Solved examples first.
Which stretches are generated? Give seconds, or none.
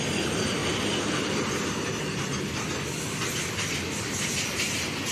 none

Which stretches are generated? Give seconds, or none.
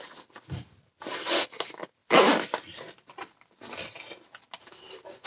none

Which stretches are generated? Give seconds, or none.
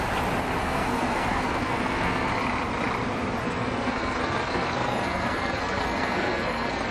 0.6-2.3; 3.4-6.9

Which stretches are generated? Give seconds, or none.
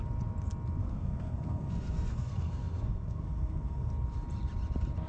0.8-3.9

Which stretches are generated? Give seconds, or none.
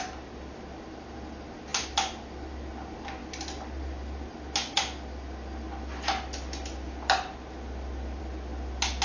none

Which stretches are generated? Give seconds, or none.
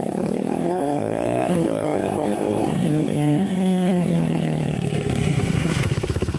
0.0-6.4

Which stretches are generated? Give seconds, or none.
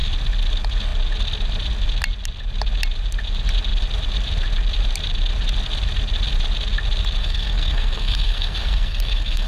7.2-9.5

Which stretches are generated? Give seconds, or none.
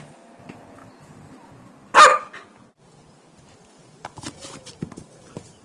none